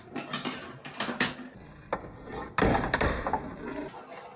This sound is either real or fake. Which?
real